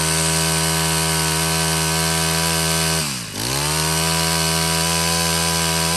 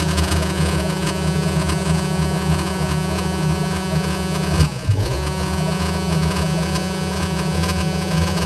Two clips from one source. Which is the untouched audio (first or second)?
first